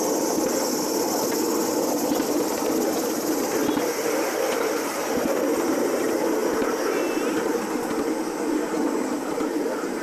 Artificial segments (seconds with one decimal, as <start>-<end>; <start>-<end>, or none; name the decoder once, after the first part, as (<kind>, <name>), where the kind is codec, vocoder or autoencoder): none

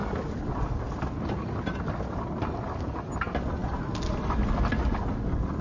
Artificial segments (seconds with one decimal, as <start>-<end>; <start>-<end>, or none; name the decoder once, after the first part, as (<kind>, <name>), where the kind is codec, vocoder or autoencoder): none

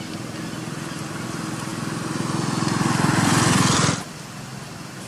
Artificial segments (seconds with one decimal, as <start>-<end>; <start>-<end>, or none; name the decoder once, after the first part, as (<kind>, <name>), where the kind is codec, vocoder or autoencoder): none